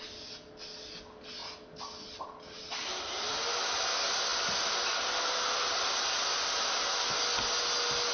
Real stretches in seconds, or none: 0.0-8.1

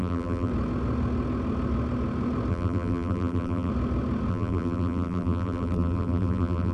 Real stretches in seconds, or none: 0.5-2.5; 3.7-4.3

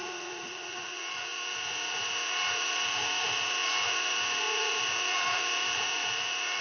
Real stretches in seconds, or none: none

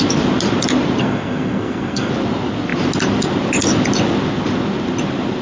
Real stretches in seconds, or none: 0.0-1.0; 2.1-5.4

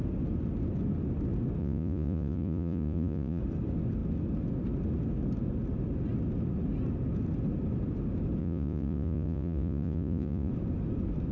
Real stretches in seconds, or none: 0.0-1.6; 3.4-8.4; 10.5-11.3

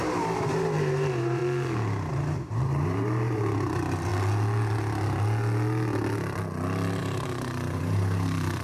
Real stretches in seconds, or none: 1.4-2.1; 4.1-7.0

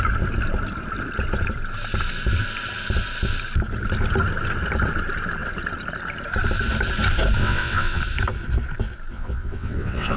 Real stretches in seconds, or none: 0.0-7.4; 8.0-9.1